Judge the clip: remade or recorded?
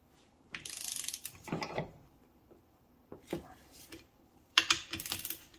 remade